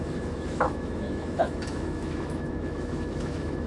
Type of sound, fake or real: fake